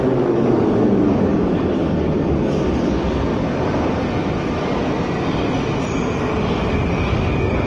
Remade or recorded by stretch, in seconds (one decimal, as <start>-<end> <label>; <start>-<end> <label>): 0.0-3.3 remade; 3.3-7.2 recorded; 7.2-7.7 remade